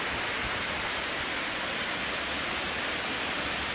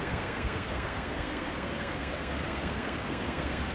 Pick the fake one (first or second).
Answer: second